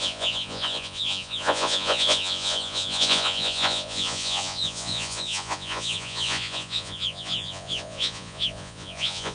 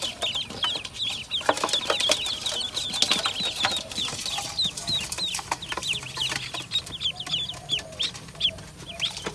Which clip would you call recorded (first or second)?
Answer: second